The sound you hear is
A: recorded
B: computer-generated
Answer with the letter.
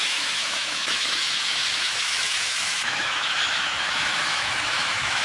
B